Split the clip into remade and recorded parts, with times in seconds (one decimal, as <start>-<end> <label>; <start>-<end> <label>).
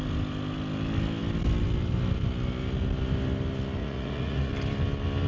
0.0-3.8 recorded; 3.8-4.5 remade; 4.5-5.3 recorded